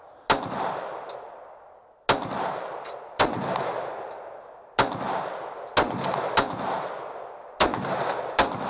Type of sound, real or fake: real